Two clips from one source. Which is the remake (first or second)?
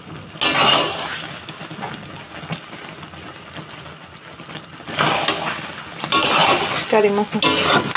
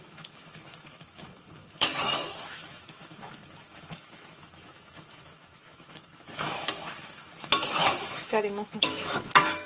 second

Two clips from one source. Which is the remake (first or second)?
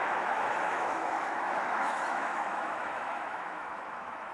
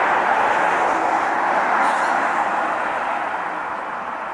first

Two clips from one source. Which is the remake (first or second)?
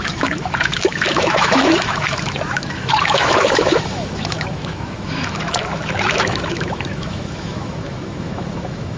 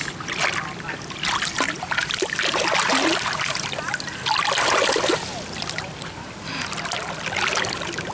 first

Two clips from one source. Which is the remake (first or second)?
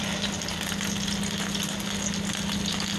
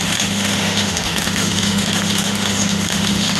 second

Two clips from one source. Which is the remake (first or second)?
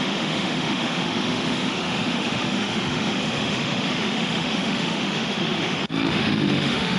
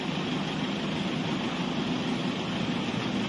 first